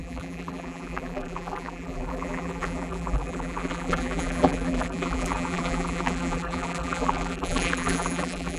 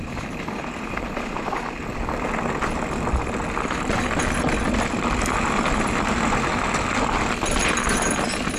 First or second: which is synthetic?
first